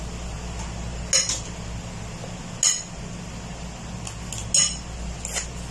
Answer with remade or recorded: recorded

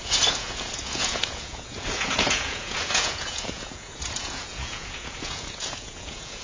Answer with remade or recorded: remade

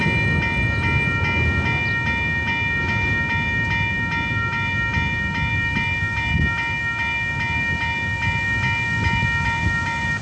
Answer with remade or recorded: recorded